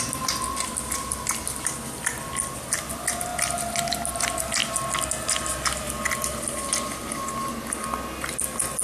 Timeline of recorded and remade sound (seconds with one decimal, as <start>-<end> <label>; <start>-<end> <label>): 0.0-8.8 recorded